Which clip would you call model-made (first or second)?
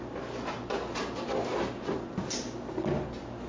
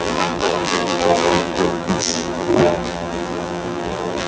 second